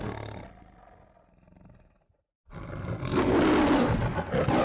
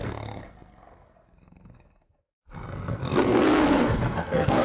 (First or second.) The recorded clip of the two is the first